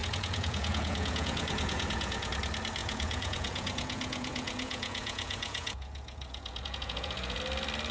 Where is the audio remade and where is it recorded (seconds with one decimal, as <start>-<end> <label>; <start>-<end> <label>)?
0.0-2.3 remade; 2.3-2.8 recorded; 2.8-7.4 remade; 7.4-7.9 recorded